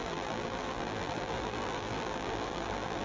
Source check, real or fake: fake